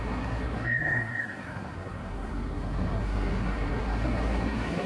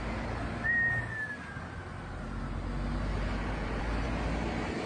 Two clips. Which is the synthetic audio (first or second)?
first